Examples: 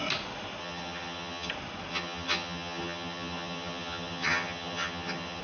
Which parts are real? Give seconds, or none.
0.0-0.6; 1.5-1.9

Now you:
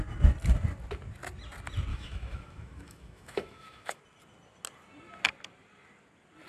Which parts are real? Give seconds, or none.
0.0-1.9; 4.0-6.5

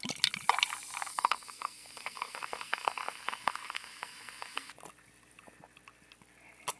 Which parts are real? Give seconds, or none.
0.0-1.1; 4.7-6.8

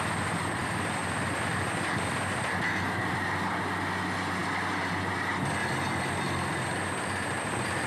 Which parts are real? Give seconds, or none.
0.0-7.9

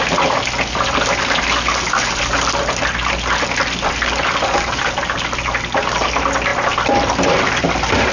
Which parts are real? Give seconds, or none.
0.0-8.1

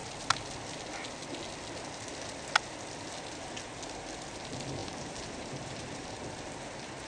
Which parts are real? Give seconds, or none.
0.0-4.8; 6.2-7.1

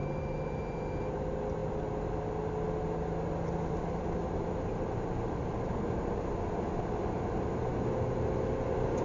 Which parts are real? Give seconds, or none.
0.6-9.0

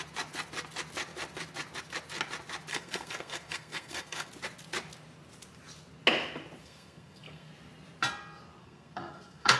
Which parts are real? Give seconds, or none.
0.0-2.7; 4.3-6.6; 7.5-8.6